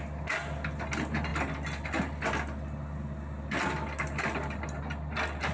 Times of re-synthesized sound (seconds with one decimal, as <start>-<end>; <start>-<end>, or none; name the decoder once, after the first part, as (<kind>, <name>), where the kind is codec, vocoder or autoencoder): none